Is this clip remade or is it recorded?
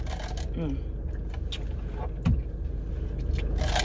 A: recorded